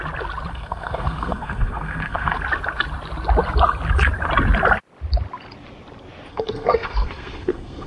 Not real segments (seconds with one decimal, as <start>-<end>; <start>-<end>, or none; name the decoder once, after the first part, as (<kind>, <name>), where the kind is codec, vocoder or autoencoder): 0.5-2.4 (codec, SNAC); 6.3-7.9